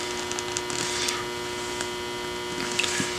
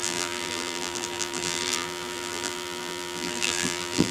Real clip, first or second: first